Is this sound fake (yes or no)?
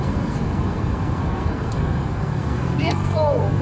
yes